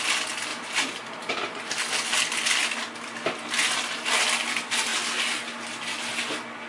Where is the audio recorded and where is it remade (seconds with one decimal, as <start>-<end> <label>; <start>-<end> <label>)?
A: 0.0-0.5 recorded; 0.5-1.3 remade; 1.3-6.7 recorded